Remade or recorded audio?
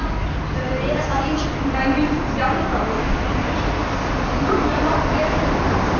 recorded